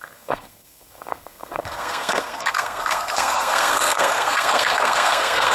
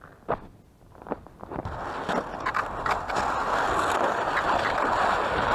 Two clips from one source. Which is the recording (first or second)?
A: second